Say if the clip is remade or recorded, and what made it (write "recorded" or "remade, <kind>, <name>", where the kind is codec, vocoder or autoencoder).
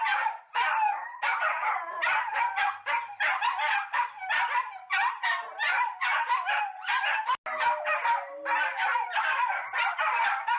recorded